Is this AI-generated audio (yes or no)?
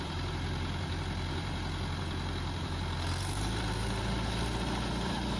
yes